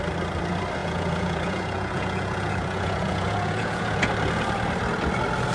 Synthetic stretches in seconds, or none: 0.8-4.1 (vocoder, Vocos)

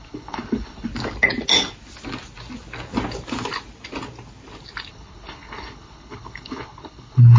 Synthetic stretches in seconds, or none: 0.0-0.9 (codec, HILCodec); 4.9-7.4

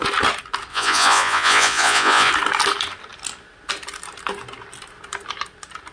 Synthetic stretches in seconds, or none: 0.7-2.3 (vocoder, Vocos)

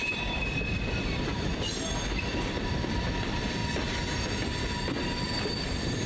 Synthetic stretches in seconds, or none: 0.0-3.6 (vocoder, BigVGAN v2); 4.7-6.1